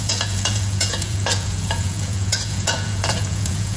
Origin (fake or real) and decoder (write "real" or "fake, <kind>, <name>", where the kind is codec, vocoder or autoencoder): fake, vocoder, Vocos